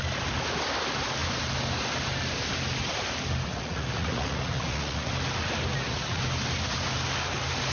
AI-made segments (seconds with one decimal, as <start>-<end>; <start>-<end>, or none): 3.5-5.1; 5.7-6.2